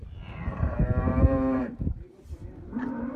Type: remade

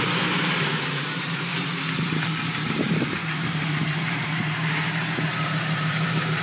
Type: remade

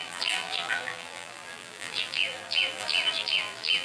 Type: remade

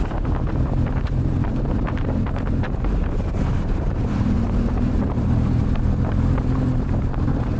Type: remade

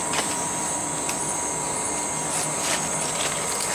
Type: recorded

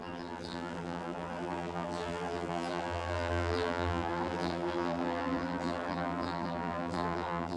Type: remade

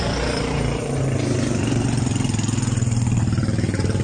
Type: remade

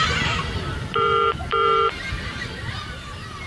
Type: remade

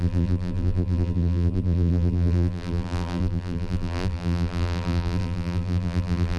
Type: remade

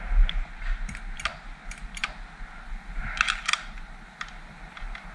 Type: recorded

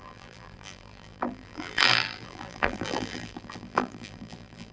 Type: remade